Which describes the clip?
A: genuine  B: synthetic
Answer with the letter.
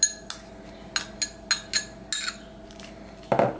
A